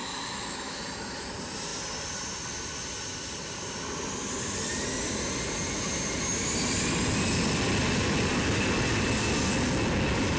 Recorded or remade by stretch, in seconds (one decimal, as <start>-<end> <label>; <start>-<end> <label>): 0.0-0.8 remade; 0.8-10.4 recorded